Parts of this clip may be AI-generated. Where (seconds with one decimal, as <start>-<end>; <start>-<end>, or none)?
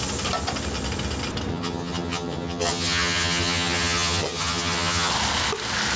1.5-5.1